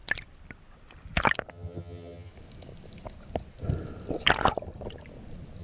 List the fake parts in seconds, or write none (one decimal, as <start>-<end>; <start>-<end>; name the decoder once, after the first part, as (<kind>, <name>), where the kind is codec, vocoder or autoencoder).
1.5-2.3 (vocoder, HiFi-GAN)